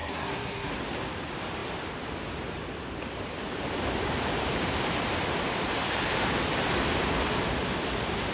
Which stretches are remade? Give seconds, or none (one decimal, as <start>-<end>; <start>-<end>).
0.0-0.7